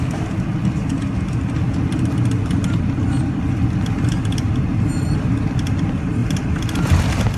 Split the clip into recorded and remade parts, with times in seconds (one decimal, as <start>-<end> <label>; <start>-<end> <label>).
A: 0.0-6.2 recorded; 6.2-7.0 remade; 7.0-7.4 recorded